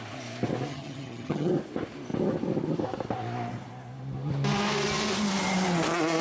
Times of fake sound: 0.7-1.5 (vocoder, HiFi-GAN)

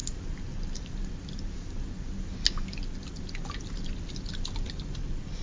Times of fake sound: none

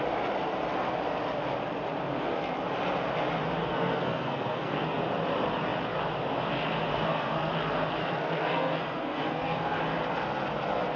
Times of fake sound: 3.6-5.0 (codec, SNAC); 6.9-7.5; 8.0-9.8

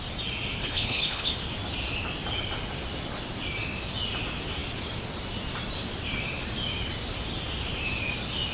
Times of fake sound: 0.6-1.3 (codec, HILCodec)

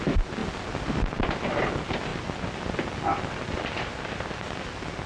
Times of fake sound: none

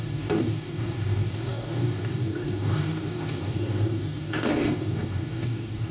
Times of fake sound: 0.0-5.9 (codec, DAC)

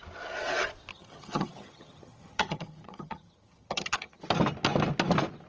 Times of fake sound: 0.9-4.2 (vocoder, HiFi-GAN)